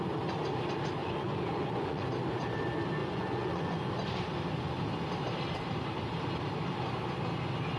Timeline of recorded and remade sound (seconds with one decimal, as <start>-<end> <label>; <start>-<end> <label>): 0.0-1.0 recorded; 1.0-2.1 remade; 2.1-3.0 recorded; 3.0-3.9 remade; 3.9-7.8 recorded